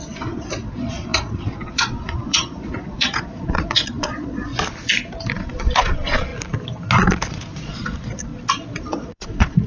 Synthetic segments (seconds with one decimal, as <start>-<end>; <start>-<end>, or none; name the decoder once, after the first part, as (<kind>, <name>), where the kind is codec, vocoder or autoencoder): 0.0-4.5 (vocoder, Vocos); 5.3-6.3; 7.3-8.3; 8.9-9.7